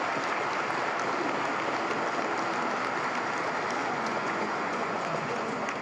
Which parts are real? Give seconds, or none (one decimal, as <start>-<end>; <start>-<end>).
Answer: 0.0-3.8

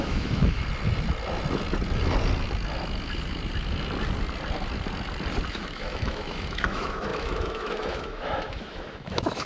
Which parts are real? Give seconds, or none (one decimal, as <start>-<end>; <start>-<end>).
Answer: 0.6-5.5

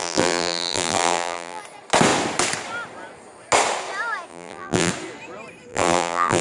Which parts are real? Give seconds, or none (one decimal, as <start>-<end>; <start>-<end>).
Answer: 1.6-4.3; 4.9-5.7

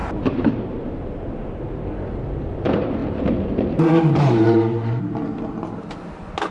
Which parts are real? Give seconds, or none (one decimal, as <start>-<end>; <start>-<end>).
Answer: 1.9-3.0; 5.0-6.5

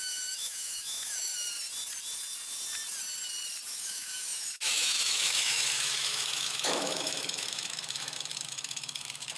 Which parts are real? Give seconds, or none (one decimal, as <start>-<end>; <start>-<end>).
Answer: 1.3-3.7

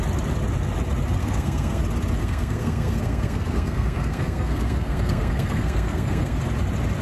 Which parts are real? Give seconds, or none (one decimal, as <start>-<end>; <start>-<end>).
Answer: 0.0-1.2; 1.8-2.2; 6.4-7.0